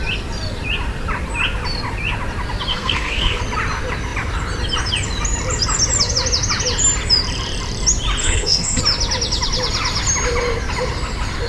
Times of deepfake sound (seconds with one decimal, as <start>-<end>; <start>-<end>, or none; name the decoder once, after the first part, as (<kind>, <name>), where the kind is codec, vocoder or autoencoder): 2.7-3.4 (codec, SNAC); 8.2-8.8